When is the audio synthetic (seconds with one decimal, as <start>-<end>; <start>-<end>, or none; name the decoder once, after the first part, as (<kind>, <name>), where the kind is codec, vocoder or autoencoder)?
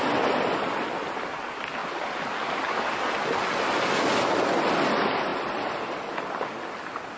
none